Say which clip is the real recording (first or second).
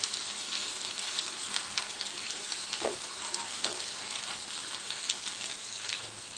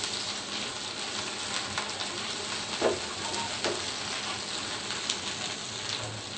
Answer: second